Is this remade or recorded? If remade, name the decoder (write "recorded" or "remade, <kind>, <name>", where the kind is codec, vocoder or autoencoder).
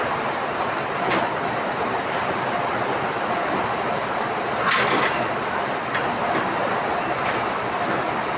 recorded